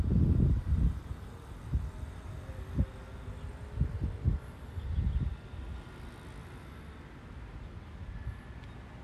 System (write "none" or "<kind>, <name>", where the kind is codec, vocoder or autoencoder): none